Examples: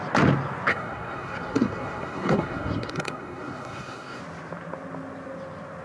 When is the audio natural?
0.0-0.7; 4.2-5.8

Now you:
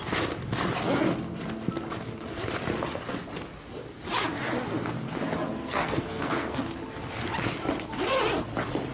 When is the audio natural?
0.0-5.6; 6.6-8.9

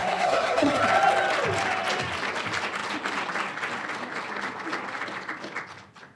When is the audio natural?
0.8-6.2

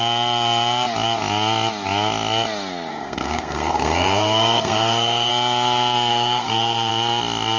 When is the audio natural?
0.0-2.9; 5.3-6.1; 6.9-7.6

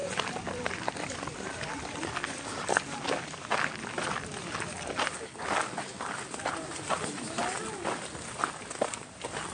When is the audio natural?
0.0-9.5